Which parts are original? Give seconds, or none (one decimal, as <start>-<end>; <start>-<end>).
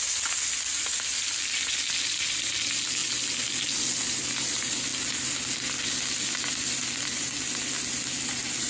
0.0-8.7